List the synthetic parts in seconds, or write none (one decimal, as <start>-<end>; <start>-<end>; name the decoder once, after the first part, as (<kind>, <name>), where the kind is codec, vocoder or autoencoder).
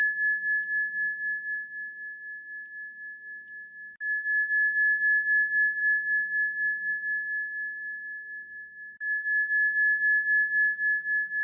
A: 5.8-6.9 (codec, DAC); 7.8-9.0